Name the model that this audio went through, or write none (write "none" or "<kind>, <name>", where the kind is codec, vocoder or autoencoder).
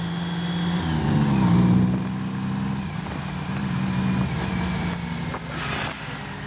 none